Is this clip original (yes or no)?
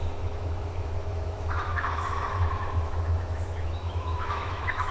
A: no